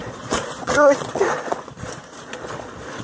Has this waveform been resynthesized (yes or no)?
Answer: yes